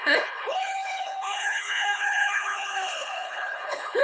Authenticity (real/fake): fake